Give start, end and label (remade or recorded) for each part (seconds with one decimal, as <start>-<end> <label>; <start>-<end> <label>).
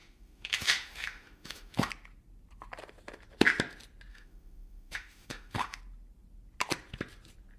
0.0-1.9 remade; 1.9-4.1 recorded; 4.1-5.8 remade; 5.8-7.6 recorded